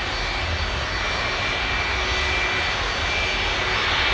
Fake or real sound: real